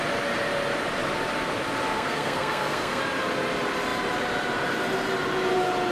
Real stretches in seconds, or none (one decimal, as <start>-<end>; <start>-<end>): 0.0-1.9; 3.0-5.9